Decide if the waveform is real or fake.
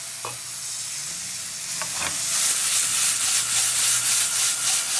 real